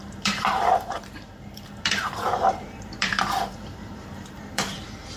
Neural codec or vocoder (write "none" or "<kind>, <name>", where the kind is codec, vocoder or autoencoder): vocoder, BigVGAN v2